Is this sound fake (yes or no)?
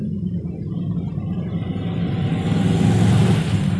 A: no